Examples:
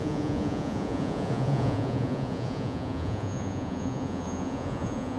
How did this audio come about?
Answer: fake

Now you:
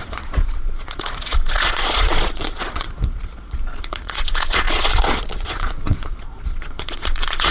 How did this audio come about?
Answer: fake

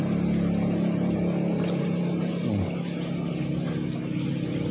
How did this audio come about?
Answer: real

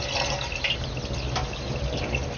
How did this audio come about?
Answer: real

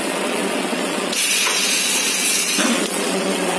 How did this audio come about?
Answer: fake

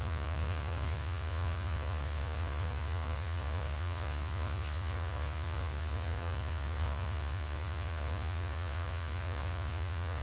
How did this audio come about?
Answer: fake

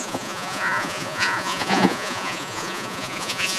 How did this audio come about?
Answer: fake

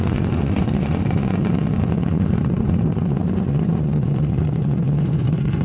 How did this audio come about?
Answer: fake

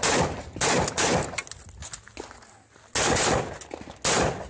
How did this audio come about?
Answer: real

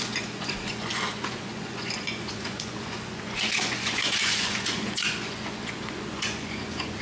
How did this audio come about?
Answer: fake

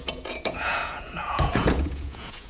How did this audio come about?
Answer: fake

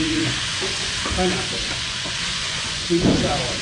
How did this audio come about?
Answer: fake